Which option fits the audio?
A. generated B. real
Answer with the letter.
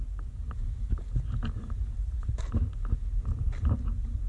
A